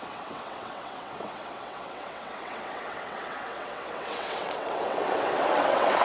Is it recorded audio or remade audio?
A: remade